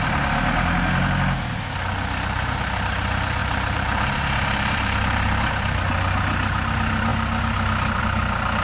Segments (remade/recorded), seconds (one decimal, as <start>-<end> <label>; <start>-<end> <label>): 0.0-3.4 recorded; 3.4-5.5 remade; 5.5-8.6 recorded